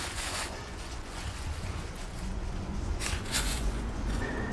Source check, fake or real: fake